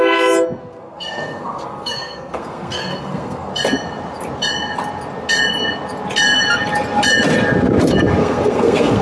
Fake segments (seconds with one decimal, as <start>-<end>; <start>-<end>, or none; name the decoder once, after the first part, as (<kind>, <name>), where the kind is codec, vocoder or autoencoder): 0.6-3.5 (codec, SNAC); 8.2-9.0